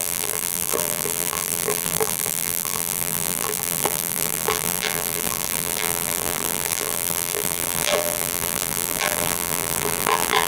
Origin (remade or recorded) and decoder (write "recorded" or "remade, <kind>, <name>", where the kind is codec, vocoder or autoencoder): remade, vocoder, BigVGAN v2